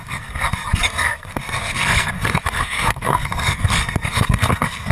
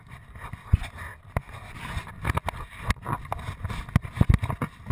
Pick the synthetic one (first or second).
first